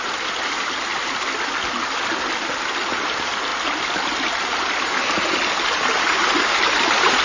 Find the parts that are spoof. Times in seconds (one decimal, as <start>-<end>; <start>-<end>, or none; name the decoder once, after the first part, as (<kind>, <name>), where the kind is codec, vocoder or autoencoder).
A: none